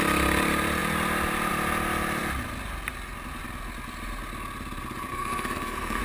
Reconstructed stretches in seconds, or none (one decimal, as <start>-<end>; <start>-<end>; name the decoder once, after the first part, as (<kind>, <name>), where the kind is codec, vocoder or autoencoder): 5.1-6.0 (codec, SNAC)